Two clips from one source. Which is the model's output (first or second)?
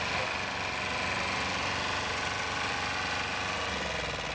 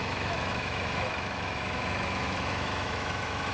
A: second